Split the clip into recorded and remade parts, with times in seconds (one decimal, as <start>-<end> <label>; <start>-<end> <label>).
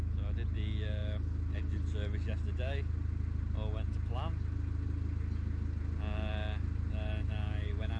0.0-8.0 recorded